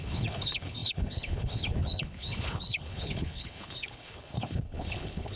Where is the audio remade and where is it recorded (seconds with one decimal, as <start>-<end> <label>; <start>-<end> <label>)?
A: 0.0-5.4 remade